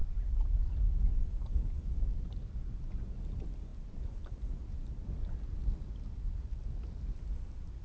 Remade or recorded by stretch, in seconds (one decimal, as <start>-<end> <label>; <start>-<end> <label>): 0.0-7.8 recorded